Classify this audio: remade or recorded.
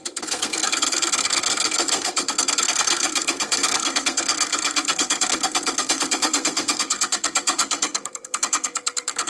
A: remade